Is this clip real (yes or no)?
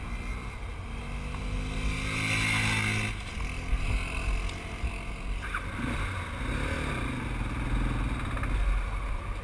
yes